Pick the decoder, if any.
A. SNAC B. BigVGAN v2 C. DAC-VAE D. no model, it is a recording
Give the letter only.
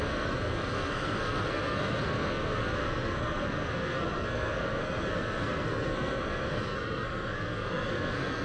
A